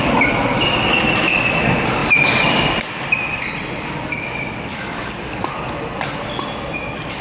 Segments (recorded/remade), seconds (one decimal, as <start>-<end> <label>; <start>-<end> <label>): 0.0-4.7 recorded; 4.7-5.5 remade; 5.5-7.2 recorded